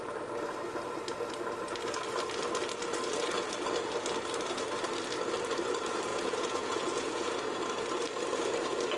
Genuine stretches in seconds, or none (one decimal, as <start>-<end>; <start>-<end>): 0.0-6.1; 7.3-9.0